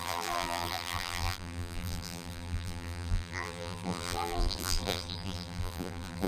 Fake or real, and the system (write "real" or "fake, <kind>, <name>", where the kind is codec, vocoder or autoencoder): fake, vocoder, BigVGAN v2